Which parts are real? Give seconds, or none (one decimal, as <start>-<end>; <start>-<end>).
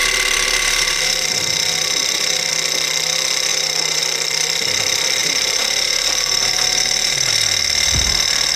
2.5-3.5; 4.0-5.2; 7.3-8.6